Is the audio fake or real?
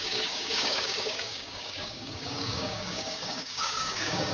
fake